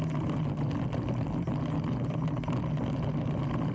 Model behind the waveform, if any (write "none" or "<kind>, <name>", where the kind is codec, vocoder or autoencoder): none